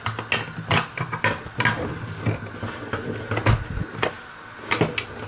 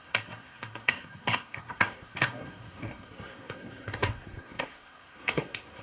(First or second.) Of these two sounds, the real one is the first